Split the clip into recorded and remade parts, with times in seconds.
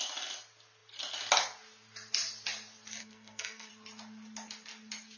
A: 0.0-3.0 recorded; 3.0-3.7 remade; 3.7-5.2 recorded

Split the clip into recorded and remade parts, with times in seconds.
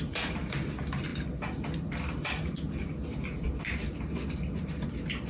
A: 0.0-5.3 recorded